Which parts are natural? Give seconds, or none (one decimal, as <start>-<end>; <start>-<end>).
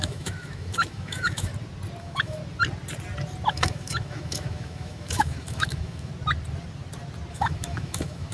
1.5-2.0; 2.4-3.5; 6.1-7.3